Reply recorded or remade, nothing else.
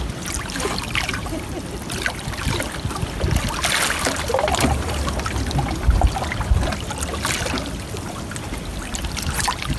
recorded